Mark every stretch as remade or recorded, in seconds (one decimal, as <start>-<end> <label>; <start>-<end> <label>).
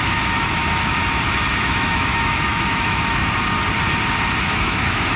0.0-1.0 remade; 1.0-1.6 recorded; 1.6-3.2 remade; 3.2-4.4 recorded; 4.4-5.2 remade